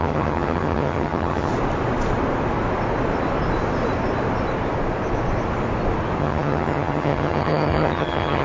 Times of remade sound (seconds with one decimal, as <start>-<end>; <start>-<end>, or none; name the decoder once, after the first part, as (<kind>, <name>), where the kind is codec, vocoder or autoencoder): 0.0-1.5 (vocoder, HiFi-GAN); 6.2-8.4